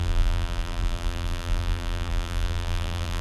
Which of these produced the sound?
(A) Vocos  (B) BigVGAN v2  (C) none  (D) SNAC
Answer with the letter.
B